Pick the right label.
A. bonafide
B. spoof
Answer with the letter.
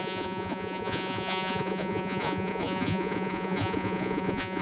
B